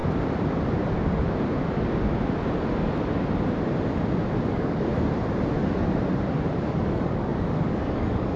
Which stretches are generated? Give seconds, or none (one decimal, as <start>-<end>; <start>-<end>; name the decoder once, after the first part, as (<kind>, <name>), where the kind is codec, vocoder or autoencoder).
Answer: 4.5-4.9 (codec, DAC); 6.6-8.4